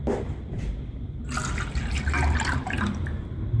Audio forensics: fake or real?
fake